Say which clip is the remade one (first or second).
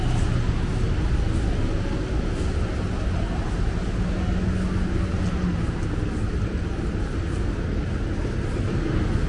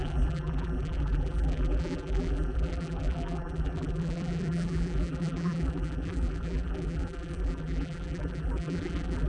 second